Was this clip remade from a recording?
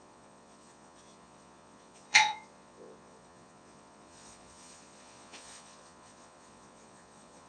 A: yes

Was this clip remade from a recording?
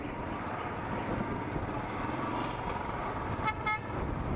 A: no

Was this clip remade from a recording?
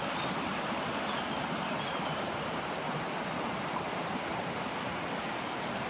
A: no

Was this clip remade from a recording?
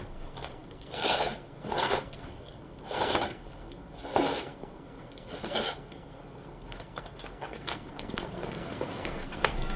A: yes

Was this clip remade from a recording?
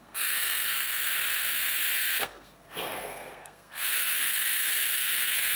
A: yes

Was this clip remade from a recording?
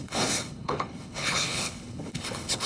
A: yes